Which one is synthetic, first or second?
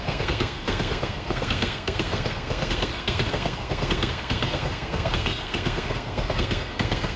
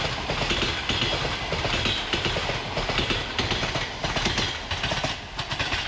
first